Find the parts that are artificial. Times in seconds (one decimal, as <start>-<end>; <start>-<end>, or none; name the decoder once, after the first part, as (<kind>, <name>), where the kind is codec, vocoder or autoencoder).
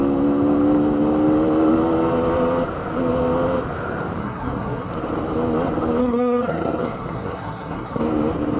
4.2-4.9 (codec, SNAC); 6.0-8.0